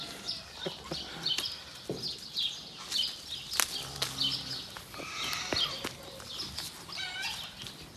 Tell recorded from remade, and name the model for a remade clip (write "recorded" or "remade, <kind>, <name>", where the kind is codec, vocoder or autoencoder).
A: recorded